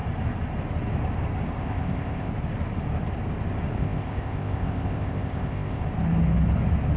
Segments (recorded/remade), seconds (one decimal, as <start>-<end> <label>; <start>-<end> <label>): 0.0-1.6 recorded; 1.6-2.3 remade; 2.3-3.8 recorded; 3.8-5.8 remade; 5.8-7.0 recorded